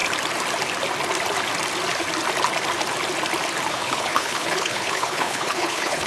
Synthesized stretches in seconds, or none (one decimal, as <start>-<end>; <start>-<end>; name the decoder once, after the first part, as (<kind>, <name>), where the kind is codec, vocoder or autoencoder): 3.7-6.1 (codec, HILCodec)